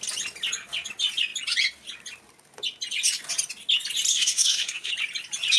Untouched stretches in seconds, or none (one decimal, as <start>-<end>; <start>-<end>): 0.0-4.1; 4.9-5.6